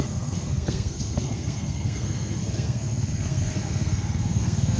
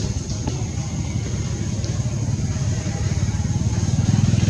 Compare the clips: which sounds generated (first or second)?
first